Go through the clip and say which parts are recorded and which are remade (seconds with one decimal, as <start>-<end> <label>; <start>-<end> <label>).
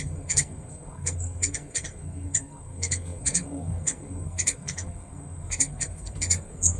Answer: 0.0-6.8 remade